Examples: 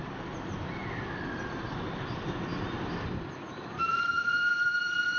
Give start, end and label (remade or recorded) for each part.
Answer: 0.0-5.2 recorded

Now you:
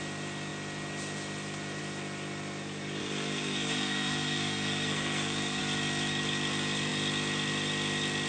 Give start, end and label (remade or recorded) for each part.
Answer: 0.0-3.0 recorded; 3.0-5.6 remade; 5.6-8.3 recorded

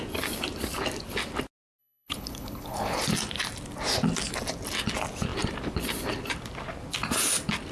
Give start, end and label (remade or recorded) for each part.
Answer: 0.0-1.8 recorded; 1.8-3.0 remade; 3.0-7.7 recorded

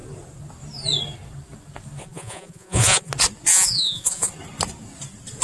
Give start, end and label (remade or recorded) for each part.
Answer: 0.0-2.0 recorded; 2.0-3.1 remade; 3.1-3.5 recorded; 3.5-4.3 remade; 4.3-5.4 recorded